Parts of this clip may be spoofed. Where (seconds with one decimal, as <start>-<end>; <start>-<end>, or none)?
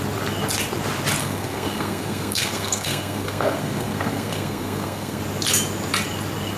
1.2-5.2